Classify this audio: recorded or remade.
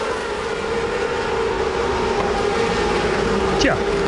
recorded